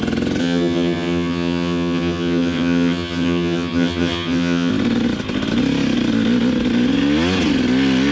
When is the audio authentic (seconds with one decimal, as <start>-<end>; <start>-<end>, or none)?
0.0-0.4; 4.7-8.1